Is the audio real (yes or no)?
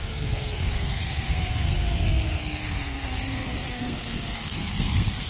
no